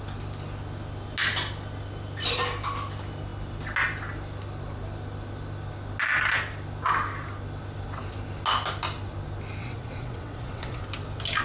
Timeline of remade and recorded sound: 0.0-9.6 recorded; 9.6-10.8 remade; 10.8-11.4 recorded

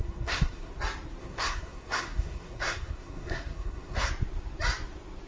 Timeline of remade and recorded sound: 0.0-0.7 remade; 0.7-1.2 recorded; 1.2-4.1 remade; 4.1-5.3 recorded

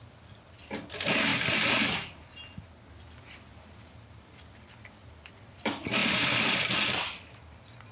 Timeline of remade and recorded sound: 0.0-3.5 recorded; 3.5-4.4 remade; 4.4-6.0 recorded; 6.0-6.7 remade; 6.7-7.9 recorded

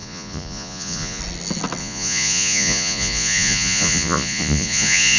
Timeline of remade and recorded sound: 0.0-1.2 remade; 1.2-1.8 recorded; 1.8-5.2 remade

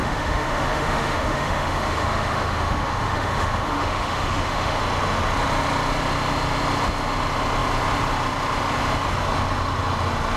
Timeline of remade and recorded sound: 0.0-4.8 remade; 4.8-10.4 recorded

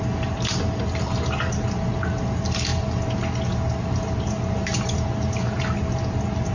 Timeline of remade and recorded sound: 0.0-6.5 recorded

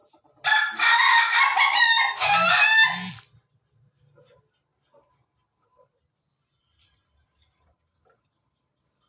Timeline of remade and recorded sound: 0.0-9.1 recorded